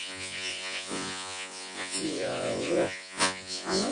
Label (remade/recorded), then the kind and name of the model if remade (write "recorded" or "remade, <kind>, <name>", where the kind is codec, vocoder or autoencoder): remade, vocoder, Vocos